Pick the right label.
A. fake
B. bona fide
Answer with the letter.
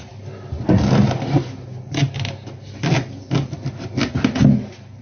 B